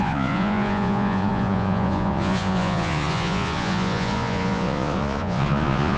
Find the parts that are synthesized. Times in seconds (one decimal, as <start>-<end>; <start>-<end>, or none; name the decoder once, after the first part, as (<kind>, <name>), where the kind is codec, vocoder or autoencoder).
0.0-6.0 (vocoder, Vocos)